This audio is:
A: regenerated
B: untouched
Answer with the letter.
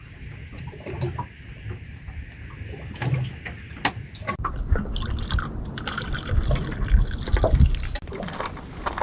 B